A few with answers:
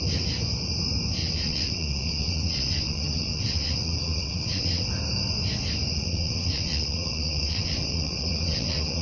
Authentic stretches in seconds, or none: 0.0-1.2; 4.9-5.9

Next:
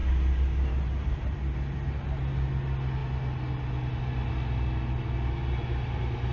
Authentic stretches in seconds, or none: 0.0-6.3

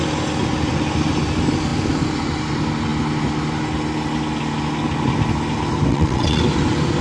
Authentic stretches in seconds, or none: 0.0-5.9; 6.4-7.0

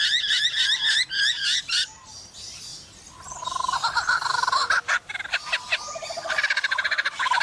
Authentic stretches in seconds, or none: 0.0-7.4

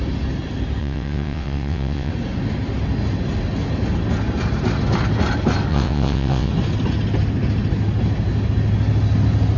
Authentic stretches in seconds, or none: 0.0-0.8; 2.1-5.7; 6.5-9.6